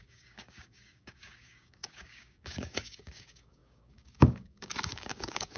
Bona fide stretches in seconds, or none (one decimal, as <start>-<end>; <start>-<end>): none